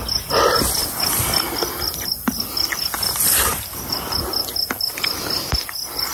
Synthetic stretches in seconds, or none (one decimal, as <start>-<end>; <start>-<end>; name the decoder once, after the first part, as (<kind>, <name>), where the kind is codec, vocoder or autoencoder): none